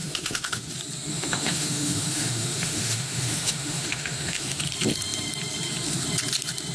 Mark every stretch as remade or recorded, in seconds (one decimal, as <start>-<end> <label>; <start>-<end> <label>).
0.0-0.7 remade; 0.7-1.1 recorded; 1.1-4.6 remade; 4.6-6.7 recorded